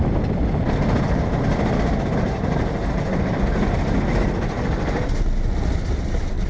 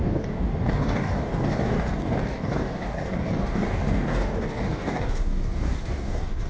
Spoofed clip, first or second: second